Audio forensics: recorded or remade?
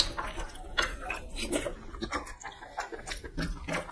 recorded